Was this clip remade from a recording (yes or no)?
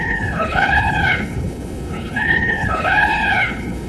yes